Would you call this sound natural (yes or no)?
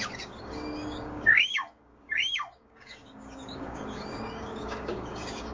no